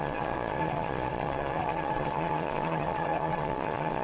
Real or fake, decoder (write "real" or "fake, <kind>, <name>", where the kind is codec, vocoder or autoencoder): fake, vocoder, Vocos